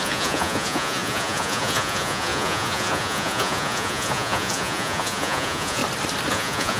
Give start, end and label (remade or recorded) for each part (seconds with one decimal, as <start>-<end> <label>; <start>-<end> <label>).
0.0-5.8 remade; 5.8-6.3 recorded; 6.3-6.8 remade